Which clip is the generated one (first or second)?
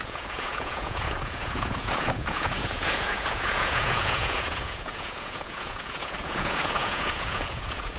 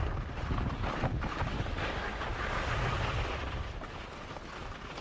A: first